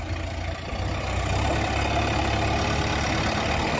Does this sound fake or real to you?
real